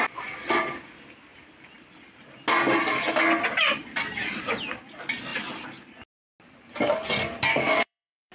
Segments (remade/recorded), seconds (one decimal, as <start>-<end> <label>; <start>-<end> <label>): 0.0-7.5 recorded; 7.5-8.3 remade